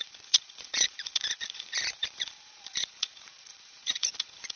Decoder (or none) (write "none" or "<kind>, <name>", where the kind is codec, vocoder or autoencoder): vocoder, Vocos